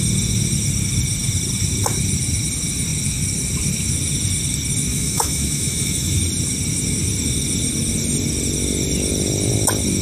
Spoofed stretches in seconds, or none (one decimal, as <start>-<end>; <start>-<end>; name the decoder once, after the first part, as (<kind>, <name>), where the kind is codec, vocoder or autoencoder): 4.9-6.2 (autoencoder, DAC-VAE)